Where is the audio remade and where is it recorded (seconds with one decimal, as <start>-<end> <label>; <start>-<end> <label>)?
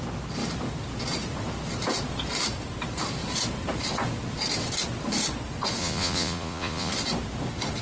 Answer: 0.0-5.8 recorded; 5.8-6.9 remade; 6.9-7.8 recorded